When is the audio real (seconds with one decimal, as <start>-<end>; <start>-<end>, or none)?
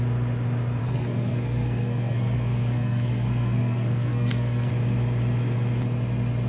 0.0-0.8; 4.7-6.5